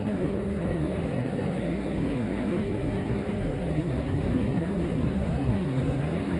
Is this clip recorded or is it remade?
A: remade